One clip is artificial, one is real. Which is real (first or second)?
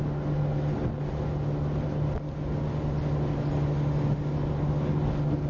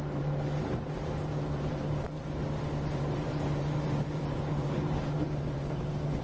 first